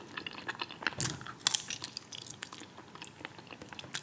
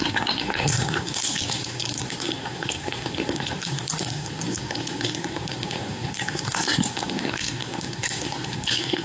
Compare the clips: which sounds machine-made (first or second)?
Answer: second